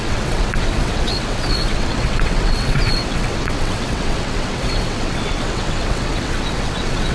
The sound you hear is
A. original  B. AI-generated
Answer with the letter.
B